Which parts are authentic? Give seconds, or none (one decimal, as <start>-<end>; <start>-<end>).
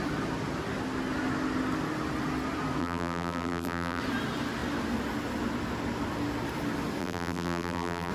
0.0-2.8; 4.0-7.0